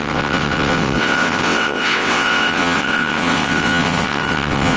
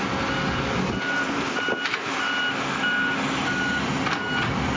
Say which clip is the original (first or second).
second